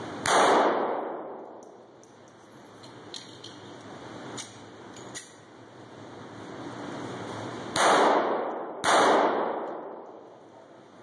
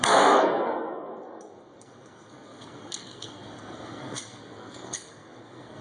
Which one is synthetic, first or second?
second